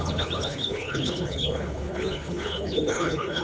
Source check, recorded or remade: remade